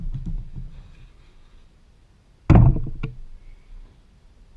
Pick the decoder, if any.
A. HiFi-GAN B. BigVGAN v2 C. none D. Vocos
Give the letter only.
C